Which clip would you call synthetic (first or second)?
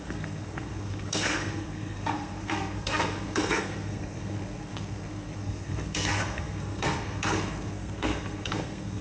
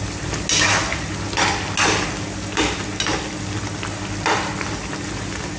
first